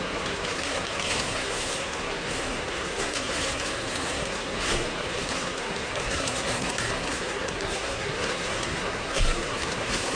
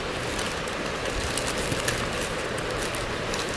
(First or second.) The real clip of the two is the second